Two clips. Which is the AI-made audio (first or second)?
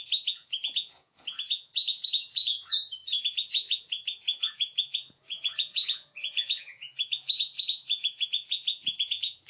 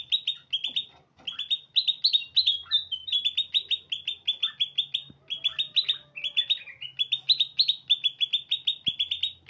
first